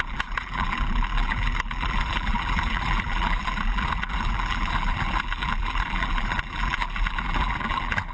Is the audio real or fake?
fake